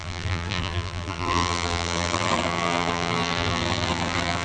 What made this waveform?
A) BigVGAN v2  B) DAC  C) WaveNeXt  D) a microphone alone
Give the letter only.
A